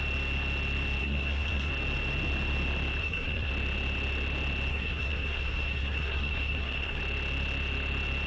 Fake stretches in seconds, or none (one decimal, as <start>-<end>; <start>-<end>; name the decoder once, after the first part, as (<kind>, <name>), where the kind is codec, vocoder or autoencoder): 1.0-1.7 (codec, SNAC); 3.0-3.5; 4.7-7.0